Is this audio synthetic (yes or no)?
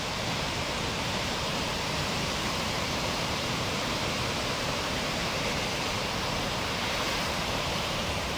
yes